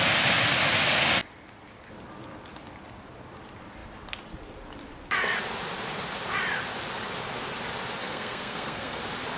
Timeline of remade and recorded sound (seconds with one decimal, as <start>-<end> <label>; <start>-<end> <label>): 0.0-8.0 recorded; 8.0-9.0 remade; 9.0-9.4 recorded

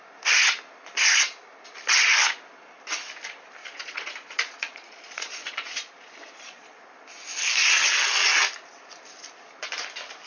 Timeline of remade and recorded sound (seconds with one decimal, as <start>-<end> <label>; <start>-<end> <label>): 0.0-3.6 recorded; 3.6-6.8 remade; 6.8-10.3 recorded

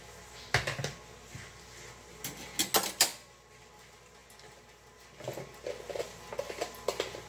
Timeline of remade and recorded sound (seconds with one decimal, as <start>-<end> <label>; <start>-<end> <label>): 0.0-7.3 recorded